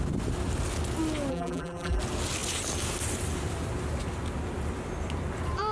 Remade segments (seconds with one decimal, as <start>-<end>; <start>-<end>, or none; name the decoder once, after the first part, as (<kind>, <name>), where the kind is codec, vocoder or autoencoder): 1.3-2.0 (vocoder, BigVGAN v2)